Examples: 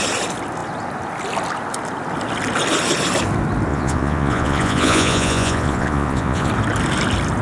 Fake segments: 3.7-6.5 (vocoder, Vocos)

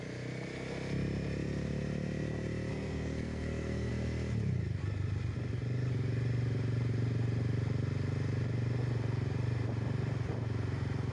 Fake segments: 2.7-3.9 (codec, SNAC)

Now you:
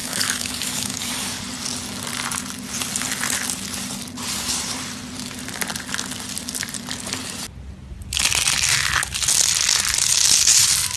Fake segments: 0.0-1.4 (codec, DAC)

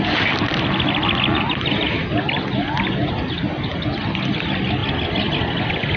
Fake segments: none

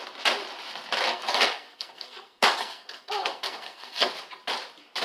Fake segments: 1.1-4.1 (codec, SNAC)